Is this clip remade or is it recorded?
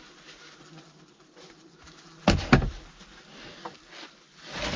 recorded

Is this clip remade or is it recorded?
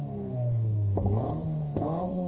remade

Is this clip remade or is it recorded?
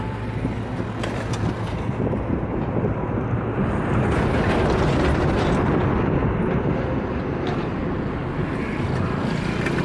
recorded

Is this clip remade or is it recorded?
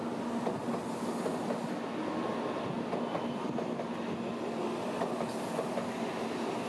recorded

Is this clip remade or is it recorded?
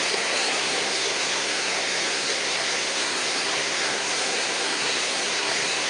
remade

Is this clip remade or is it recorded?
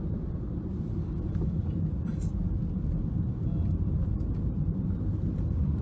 recorded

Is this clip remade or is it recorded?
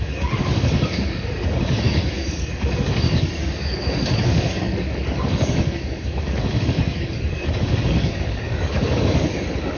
remade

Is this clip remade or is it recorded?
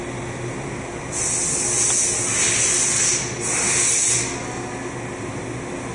recorded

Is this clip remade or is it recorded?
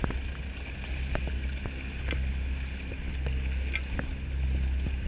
recorded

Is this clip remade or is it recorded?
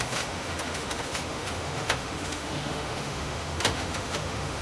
remade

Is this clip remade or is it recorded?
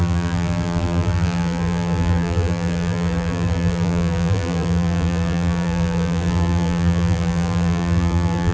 remade